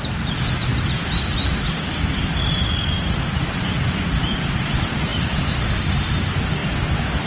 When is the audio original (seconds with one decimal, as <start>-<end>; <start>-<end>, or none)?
0.0-5.1; 5.7-6.6